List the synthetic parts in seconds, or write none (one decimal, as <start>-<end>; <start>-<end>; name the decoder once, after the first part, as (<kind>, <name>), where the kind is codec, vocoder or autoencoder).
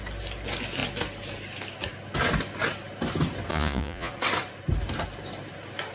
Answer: 3.5-4.1 (vocoder, Vocos)